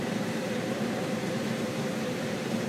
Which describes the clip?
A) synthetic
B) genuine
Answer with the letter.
A